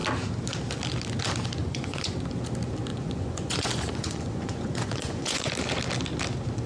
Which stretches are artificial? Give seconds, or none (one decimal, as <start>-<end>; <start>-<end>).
1.6-2.2; 2.9-5.5